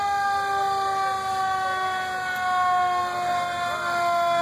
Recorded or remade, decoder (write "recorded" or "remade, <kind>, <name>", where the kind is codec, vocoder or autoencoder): recorded